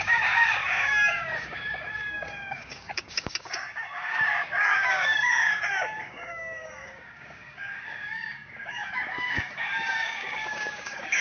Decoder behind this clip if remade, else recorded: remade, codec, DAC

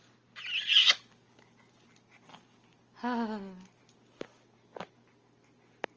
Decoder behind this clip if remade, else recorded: recorded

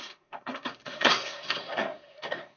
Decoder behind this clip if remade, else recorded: remade, codec, SNAC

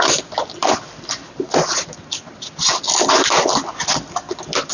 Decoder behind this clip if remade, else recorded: recorded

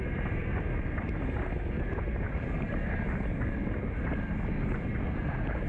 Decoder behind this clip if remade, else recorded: recorded